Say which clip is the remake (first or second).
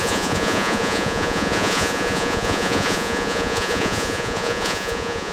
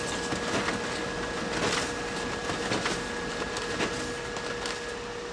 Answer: first